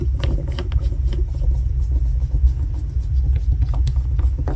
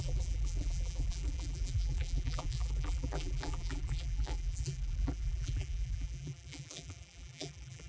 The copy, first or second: second